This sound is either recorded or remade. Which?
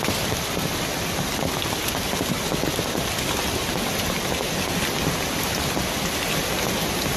recorded